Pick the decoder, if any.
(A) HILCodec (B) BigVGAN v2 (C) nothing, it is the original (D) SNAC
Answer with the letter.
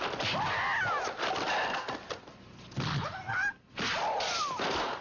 C